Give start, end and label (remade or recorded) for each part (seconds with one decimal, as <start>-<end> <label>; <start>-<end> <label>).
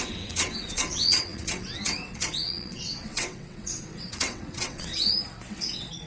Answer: 0.0-4.9 remade; 4.9-5.5 recorded; 5.5-6.1 remade